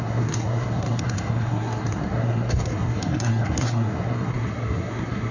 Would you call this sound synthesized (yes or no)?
yes